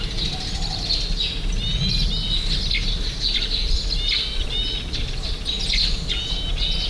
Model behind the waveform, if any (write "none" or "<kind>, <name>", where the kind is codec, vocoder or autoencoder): none